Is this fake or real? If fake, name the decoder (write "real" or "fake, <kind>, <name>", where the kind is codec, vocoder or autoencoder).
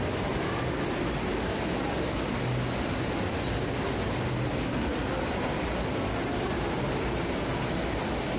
real